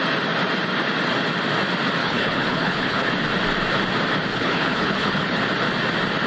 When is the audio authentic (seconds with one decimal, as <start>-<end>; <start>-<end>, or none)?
0.0-2.0; 3.1-4.3; 5.4-6.3